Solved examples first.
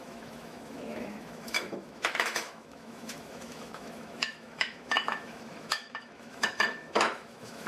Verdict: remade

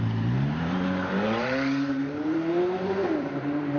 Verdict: remade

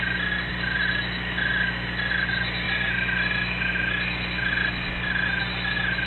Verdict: recorded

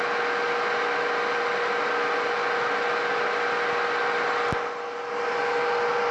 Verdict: recorded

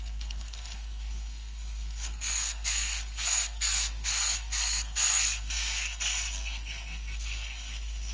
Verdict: remade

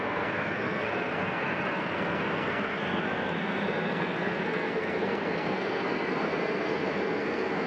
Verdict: remade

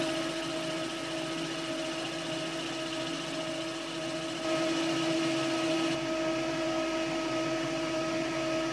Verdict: recorded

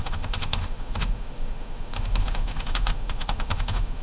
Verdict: remade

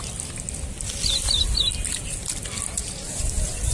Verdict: recorded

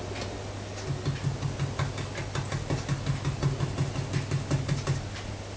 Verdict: recorded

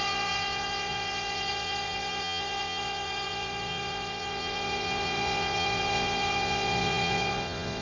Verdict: remade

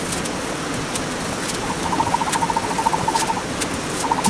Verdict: recorded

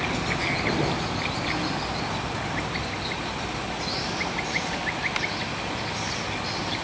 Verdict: recorded